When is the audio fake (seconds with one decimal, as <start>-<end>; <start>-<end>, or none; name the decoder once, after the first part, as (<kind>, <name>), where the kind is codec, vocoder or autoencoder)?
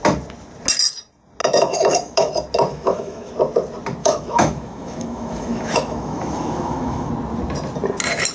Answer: 1.4-2.3 (autoencoder, DAC-VAE); 2.7-3.3; 4.0-7.1